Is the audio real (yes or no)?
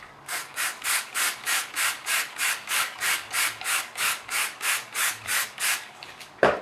no